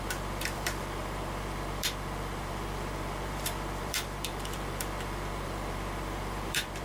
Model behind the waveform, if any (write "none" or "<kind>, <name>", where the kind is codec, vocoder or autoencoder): vocoder, BigVGAN v2